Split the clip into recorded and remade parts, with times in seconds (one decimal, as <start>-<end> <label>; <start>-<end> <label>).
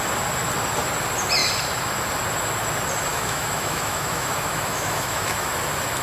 0.0-3.1 recorded; 3.1-5.5 remade; 5.5-6.0 recorded